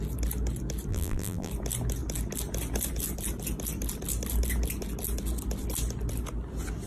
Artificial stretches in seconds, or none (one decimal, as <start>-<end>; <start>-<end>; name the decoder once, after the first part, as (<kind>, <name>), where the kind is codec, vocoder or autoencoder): 0.9-1.5 (vocoder, BigVGAN v2)